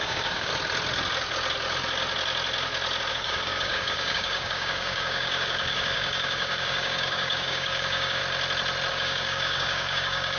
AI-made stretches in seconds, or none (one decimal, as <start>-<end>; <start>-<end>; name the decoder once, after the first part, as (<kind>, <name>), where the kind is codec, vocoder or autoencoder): 0.0-0.5 (codec, DAC); 3.1-8.2; 8.9-10.4